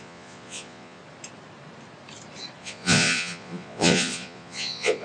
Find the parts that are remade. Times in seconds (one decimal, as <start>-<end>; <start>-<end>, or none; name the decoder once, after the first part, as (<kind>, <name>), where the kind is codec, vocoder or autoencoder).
0.0-1.0 (vocoder, Vocos); 2.6-5.0